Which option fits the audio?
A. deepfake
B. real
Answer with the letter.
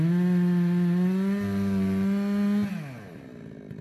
B